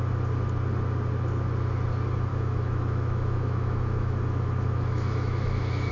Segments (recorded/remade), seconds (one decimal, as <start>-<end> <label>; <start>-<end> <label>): 0.0-2.3 recorded; 2.3-5.9 remade